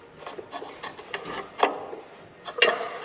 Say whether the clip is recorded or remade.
recorded